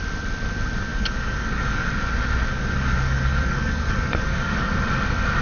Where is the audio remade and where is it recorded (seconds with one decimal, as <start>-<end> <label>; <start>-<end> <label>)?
0.0-0.9 recorded; 0.9-1.9 remade; 1.9-2.5 recorded; 2.5-4.7 remade; 4.7-5.4 recorded